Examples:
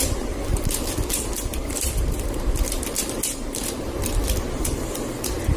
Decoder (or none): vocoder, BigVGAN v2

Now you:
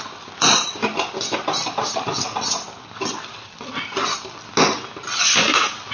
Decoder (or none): none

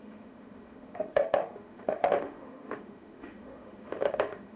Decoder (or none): autoencoder, DAC-VAE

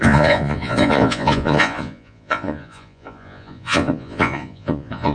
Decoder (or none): vocoder, Vocos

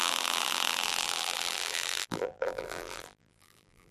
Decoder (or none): vocoder, BigVGAN v2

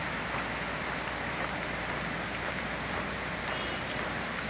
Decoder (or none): none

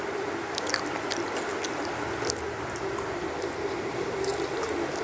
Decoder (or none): none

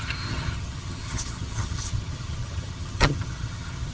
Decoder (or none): vocoder, HiFi-GAN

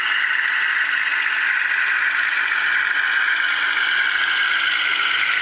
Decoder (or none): none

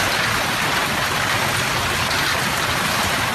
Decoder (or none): none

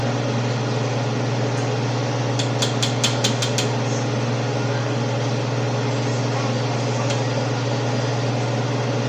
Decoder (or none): none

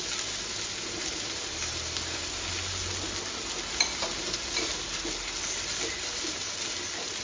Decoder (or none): none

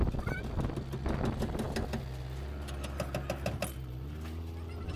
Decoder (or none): none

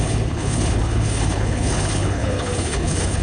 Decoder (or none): codec, HILCodec